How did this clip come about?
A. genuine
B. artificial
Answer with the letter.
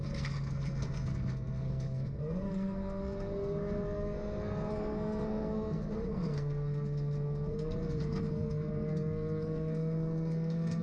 B